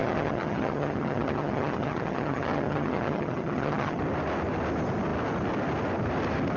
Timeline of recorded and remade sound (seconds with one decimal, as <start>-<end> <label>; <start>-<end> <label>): 0.0-4.0 remade; 4.0-6.6 recorded